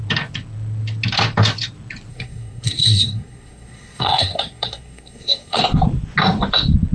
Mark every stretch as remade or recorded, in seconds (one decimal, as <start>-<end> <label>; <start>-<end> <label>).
0.0-2.1 recorded; 2.1-5.6 remade; 5.6-6.9 recorded